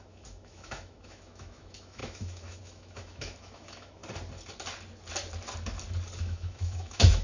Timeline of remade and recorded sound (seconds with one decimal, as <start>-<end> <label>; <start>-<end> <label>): 0.0-4.0 remade; 4.0-6.2 recorded; 6.2-7.2 remade